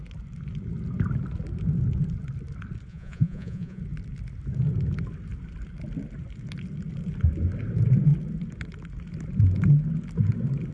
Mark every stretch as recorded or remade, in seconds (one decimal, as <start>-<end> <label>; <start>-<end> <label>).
0.0-2.9 recorded; 2.9-3.8 remade; 3.8-10.7 recorded